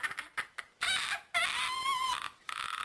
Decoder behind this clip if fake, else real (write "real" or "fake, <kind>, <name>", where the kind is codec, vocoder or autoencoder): real